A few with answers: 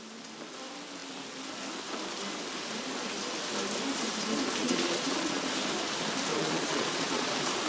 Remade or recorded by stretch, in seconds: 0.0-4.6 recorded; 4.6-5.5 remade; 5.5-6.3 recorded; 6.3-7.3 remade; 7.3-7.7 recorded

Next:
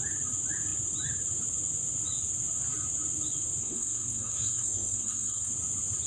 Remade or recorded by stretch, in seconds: 0.0-3.6 recorded; 3.6-5.5 remade; 5.5-6.1 recorded

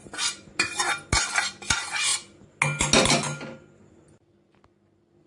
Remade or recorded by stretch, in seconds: 0.0-5.3 recorded

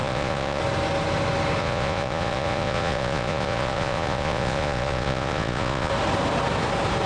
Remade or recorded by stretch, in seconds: 0.0-0.6 remade; 0.6-1.6 recorded; 1.6-5.9 remade; 5.9-7.1 recorded

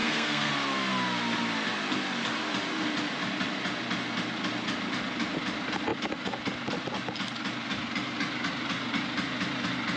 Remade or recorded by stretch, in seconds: 0.0-0.5 remade; 0.5-10.0 recorded